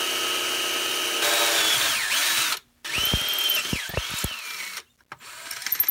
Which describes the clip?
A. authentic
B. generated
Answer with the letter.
A